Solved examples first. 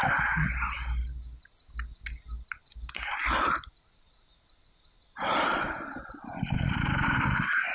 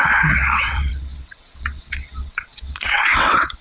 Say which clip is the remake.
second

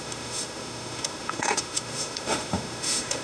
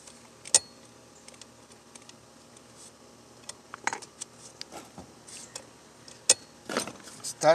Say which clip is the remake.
first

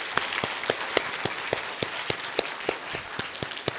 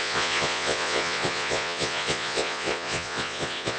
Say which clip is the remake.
second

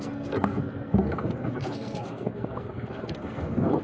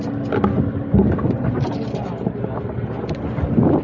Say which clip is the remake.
first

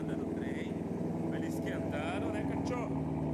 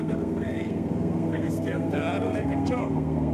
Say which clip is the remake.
second